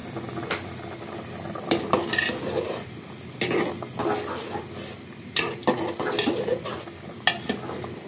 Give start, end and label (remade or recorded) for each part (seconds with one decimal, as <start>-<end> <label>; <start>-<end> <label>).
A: 0.0-8.1 recorded